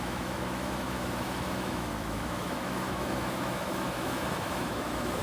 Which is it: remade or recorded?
remade